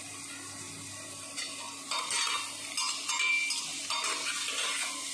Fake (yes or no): no